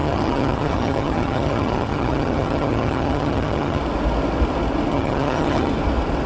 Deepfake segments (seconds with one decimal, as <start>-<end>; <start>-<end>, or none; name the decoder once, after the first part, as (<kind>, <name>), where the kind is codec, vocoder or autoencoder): 0.0-3.8 (vocoder, HiFi-GAN); 4.9-5.7